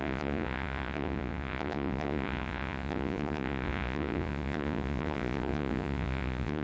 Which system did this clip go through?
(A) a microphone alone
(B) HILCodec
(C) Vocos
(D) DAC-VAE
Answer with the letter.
C